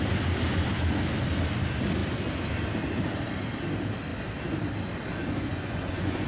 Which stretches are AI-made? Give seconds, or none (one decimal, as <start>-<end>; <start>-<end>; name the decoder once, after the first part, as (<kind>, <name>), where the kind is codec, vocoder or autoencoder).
5.5-6.3 (vocoder, Vocos)